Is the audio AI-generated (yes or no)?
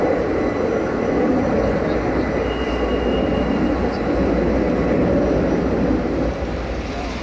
no